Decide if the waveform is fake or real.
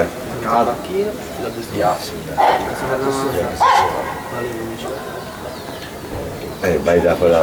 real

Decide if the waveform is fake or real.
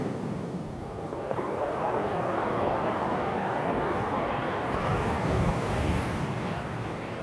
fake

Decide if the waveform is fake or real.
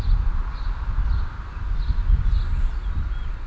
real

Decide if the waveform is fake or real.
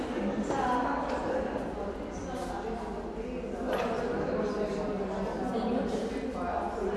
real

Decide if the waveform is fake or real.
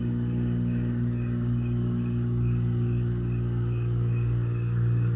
fake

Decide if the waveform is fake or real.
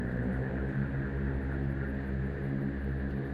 real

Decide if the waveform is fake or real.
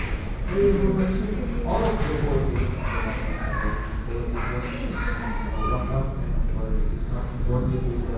real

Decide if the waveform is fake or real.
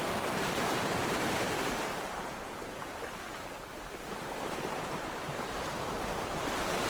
fake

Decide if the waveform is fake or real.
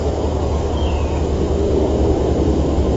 fake